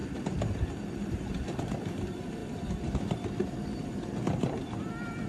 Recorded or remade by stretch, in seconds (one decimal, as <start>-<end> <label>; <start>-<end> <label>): 0.0-5.3 remade